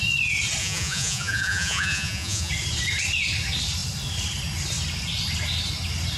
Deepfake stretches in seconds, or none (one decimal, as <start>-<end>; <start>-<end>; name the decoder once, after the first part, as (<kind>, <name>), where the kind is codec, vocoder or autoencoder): 0.6-2.5 (vocoder, Vocos)